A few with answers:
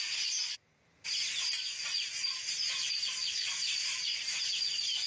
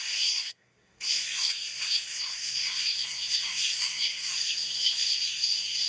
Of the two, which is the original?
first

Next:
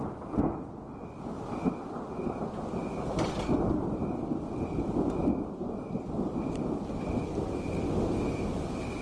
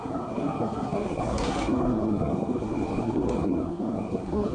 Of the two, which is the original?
first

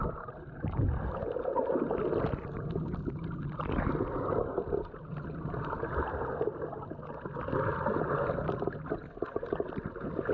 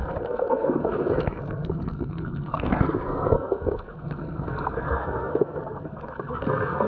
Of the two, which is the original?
first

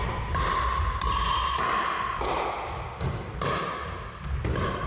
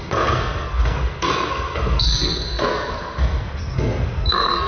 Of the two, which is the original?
first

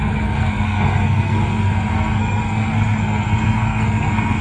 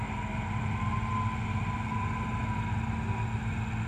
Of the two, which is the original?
second